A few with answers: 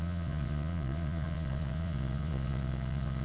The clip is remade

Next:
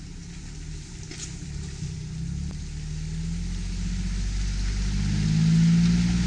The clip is recorded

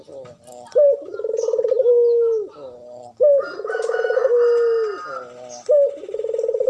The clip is recorded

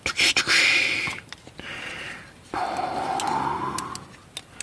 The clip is recorded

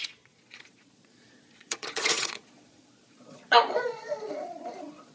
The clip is remade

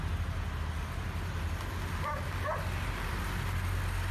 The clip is recorded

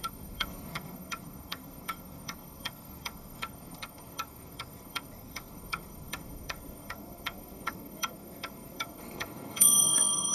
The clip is remade